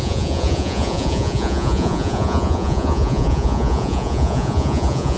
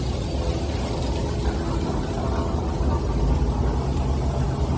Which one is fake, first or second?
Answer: first